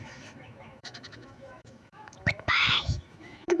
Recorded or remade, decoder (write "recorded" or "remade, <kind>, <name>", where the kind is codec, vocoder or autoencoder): remade, autoencoder, DAC-VAE